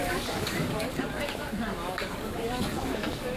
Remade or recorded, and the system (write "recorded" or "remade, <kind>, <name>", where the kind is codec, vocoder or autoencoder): remade, codec, DAC